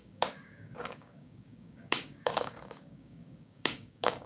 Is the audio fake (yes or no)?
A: yes